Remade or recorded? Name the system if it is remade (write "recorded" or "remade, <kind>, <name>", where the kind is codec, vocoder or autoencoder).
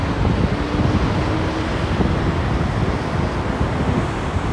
recorded